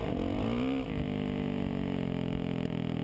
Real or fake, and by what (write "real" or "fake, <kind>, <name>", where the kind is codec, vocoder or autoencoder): real